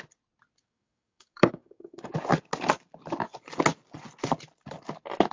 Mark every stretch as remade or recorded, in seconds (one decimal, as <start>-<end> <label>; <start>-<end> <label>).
0.0-0.6 recorded; 0.6-2.1 remade; 2.1-5.3 recorded